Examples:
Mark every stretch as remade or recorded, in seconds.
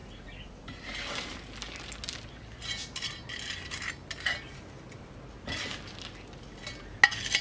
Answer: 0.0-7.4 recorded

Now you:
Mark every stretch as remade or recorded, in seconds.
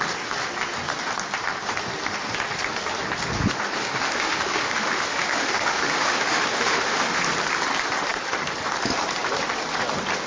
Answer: 0.0-3.8 recorded; 3.8-7.2 remade; 7.2-10.3 recorded